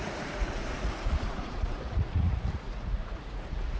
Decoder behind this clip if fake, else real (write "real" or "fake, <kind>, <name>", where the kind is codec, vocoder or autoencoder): fake, vocoder, Vocos